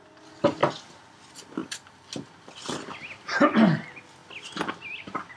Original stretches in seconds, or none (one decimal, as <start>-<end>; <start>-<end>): 0.0-5.4